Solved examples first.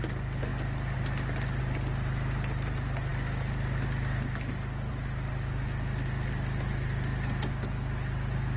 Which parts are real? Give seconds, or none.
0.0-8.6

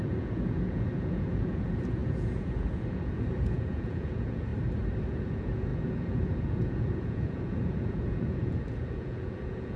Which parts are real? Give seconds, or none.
4.5-5.1

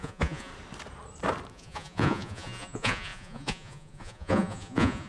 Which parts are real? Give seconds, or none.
0.5-1.5

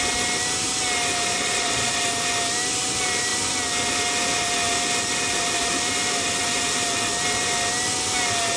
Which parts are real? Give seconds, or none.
0.0-1.3; 2.0-8.6

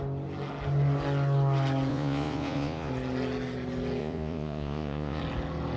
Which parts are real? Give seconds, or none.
0.0-1.9; 2.9-4.0; 5.2-5.8

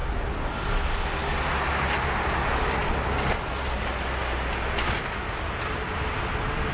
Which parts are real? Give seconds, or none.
0.0-6.7

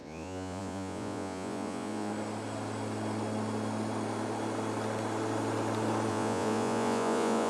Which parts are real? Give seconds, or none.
2.1-6.1